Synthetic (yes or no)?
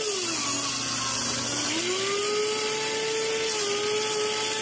no